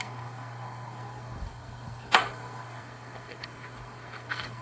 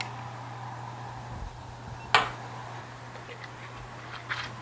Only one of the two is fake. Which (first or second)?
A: first